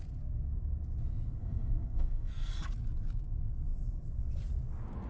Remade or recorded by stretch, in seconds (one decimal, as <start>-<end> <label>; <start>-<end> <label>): 0.0-1.4 recorded; 1.4-2.5 remade; 2.5-5.1 recorded